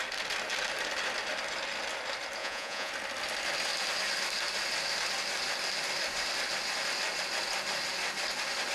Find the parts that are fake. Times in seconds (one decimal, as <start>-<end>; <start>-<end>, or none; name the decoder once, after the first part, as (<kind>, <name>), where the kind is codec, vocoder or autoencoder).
2.4-2.9 (vocoder, Vocos)